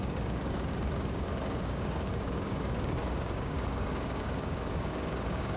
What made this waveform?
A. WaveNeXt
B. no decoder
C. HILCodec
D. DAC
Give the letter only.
D